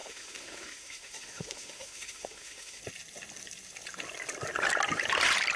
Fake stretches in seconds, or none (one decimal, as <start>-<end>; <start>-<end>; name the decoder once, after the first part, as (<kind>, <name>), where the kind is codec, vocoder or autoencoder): 0.0-2.8 (autoencoder, DAC-VAE)